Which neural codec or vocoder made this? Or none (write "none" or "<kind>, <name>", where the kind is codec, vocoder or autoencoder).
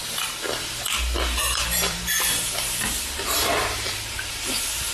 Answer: vocoder, BigVGAN v2